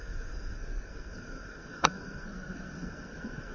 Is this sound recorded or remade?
remade